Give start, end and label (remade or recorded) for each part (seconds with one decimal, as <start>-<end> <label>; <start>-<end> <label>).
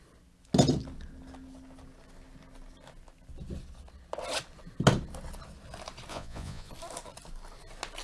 0.0-6.1 recorded; 6.1-6.7 remade; 6.7-8.0 recorded